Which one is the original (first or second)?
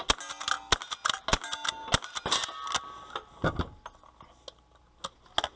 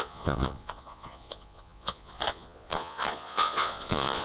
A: first